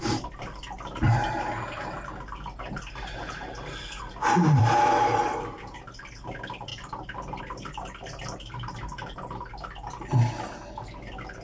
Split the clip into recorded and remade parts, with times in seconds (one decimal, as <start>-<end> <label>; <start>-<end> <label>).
0.0-11.4 remade